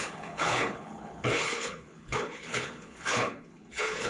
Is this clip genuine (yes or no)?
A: no